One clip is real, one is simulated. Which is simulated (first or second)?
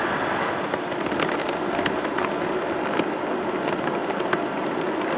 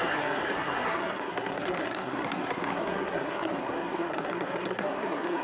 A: second